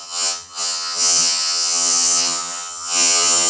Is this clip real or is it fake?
fake